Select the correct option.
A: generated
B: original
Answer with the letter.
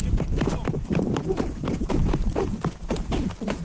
A